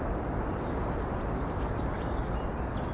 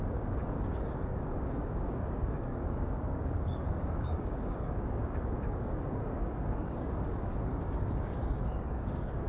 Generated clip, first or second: second